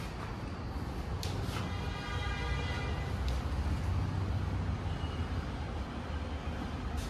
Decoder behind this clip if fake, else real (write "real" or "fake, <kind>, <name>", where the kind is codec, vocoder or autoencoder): real